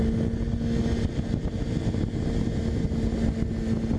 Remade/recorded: recorded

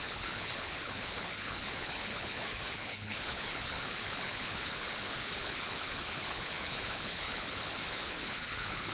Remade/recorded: remade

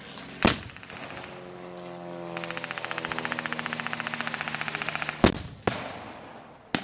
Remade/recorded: recorded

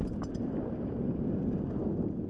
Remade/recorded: recorded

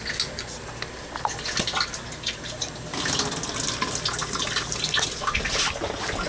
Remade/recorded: recorded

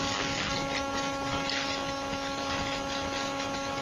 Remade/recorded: recorded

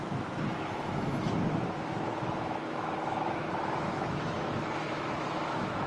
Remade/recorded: remade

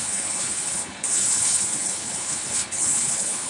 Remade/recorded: remade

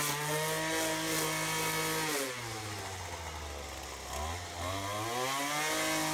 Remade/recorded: recorded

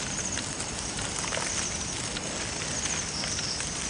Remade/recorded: recorded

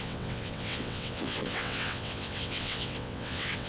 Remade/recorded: remade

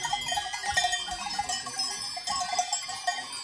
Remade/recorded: recorded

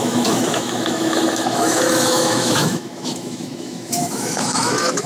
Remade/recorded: remade